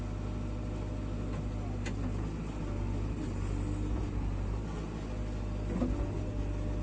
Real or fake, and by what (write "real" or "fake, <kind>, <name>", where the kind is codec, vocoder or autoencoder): real